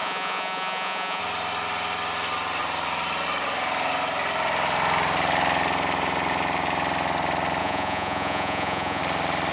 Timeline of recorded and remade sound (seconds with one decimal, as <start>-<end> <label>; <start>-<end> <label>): 0.0-1.2 remade; 1.2-7.6 recorded; 7.6-9.0 remade; 9.0-9.5 recorded